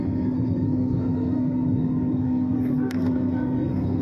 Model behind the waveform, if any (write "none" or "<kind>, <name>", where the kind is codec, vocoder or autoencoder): codec, SNAC